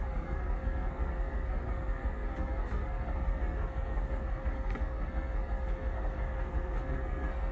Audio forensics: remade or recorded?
remade